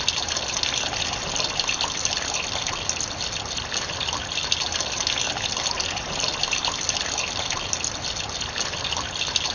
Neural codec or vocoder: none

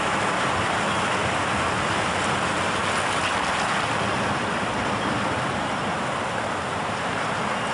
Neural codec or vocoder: none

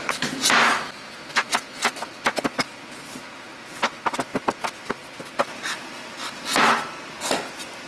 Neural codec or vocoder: none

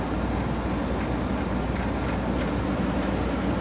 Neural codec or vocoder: none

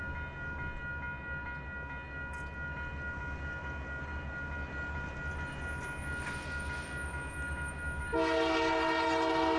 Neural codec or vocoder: none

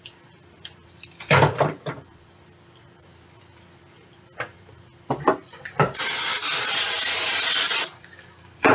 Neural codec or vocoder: vocoder, BigVGAN v2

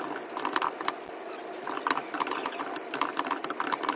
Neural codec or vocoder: none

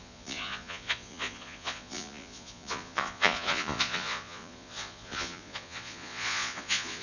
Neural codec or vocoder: vocoder, Vocos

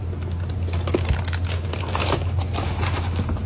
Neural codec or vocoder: none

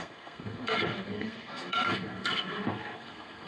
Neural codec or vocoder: codec, SNAC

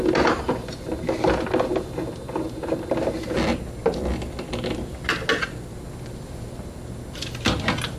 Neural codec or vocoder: none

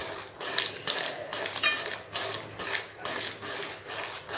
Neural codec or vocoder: none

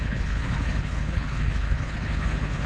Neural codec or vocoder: codec, HILCodec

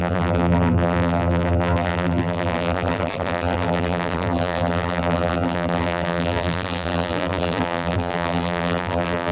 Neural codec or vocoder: vocoder, BigVGAN v2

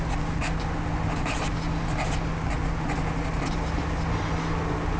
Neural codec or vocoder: none